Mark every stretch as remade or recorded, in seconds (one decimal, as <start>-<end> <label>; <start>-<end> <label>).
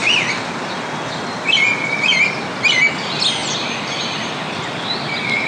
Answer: 0.0-5.5 recorded